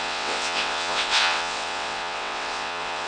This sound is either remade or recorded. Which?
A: remade